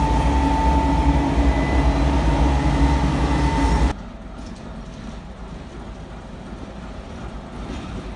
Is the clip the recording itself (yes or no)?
yes